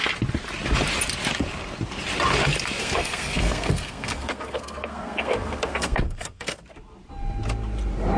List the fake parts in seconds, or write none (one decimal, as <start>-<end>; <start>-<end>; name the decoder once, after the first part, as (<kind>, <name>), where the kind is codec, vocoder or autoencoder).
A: 2.8-6.6 (codec, SNAC)